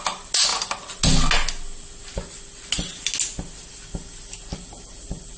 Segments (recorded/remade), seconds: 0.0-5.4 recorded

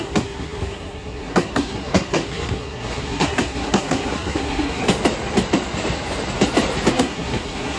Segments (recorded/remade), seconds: 0.0-4.8 remade; 4.8-6.9 recorded; 6.9-7.8 remade

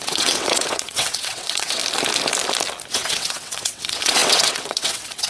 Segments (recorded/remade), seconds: 0.0-1.8 remade; 1.8-2.9 recorded; 2.9-5.3 remade

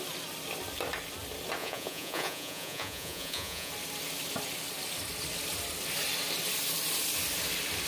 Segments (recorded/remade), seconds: 0.0-1.6 recorded; 1.6-3.7 remade; 3.7-7.9 recorded

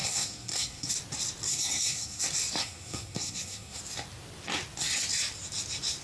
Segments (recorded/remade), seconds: 0.0-0.9 remade; 0.9-1.5 recorded; 1.5-2.2 remade; 2.2-2.6 recorded; 2.6-3.8 remade; 3.8-6.0 recorded